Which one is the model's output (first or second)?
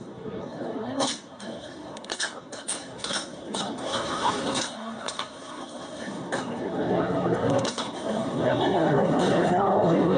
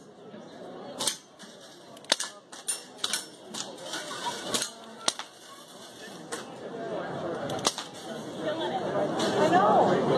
first